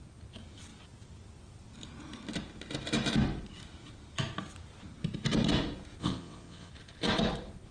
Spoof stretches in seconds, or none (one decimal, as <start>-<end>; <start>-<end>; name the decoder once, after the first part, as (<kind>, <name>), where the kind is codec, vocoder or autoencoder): 6.0-6.7 (vocoder, WaveNeXt)